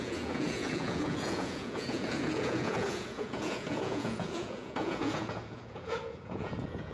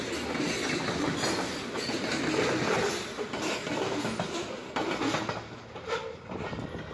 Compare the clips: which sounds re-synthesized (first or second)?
first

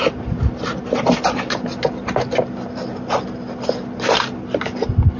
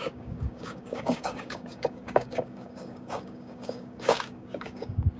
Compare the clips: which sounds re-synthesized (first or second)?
second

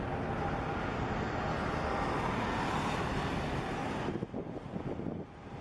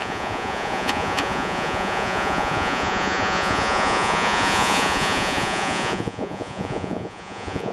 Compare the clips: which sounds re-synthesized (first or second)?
second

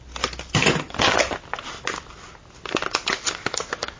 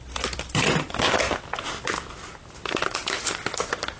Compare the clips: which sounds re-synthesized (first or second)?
second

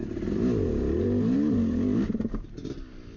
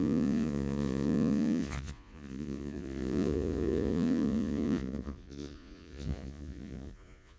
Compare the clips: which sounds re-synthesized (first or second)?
second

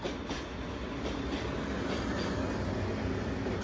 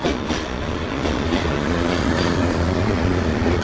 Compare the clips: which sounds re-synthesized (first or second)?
second